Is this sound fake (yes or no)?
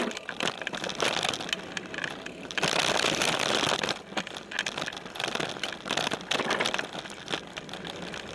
no